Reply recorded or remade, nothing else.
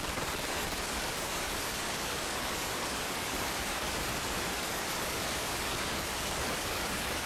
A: remade